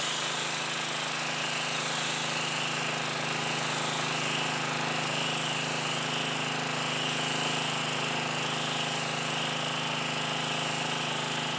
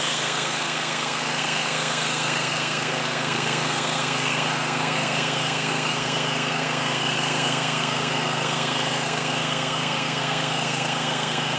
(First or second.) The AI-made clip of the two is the second